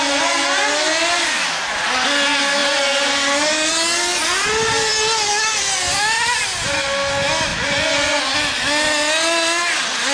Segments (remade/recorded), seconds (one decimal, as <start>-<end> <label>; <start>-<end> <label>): 0.0-7.5 recorded; 7.5-8.2 remade; 8.2-10.1 recorded